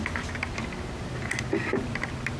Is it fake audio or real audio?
real